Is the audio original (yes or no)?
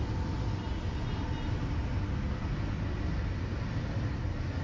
yes